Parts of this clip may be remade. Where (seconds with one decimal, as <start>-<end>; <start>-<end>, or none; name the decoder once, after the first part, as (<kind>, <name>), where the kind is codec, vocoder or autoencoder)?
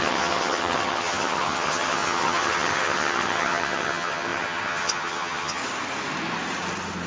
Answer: 0.0-5.6 (vocoder, HiFi-GAN)